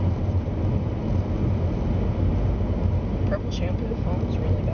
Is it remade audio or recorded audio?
recorded